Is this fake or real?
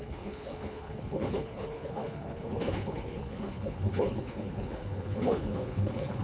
fake